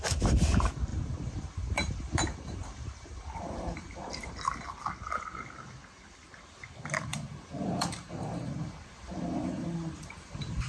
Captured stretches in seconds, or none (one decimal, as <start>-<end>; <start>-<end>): 0.0-0.9; 4.3-7.1

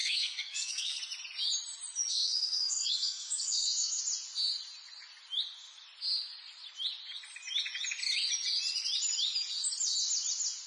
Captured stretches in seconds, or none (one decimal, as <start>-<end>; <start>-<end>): 1.0-2.1; 4.0-10.7